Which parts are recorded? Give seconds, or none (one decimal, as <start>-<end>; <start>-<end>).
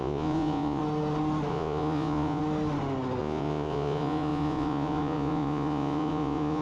0.8-1.5; 2.4-3.2